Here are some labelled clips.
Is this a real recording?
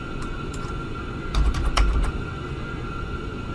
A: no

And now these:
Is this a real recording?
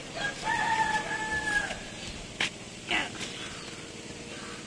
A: yes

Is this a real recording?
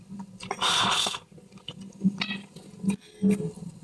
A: yes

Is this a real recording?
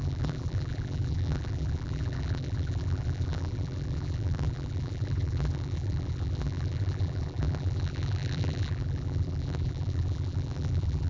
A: no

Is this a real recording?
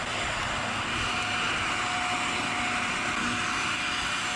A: yes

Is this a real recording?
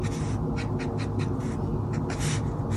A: yes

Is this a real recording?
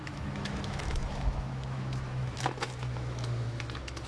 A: no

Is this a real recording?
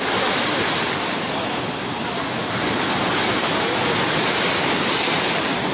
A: yes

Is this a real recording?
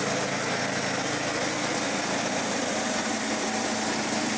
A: yes